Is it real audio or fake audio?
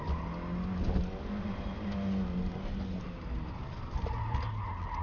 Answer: real